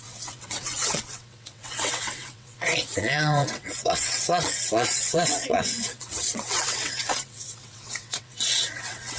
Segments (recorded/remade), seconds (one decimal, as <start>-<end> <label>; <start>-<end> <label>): 0.0-9.2 remade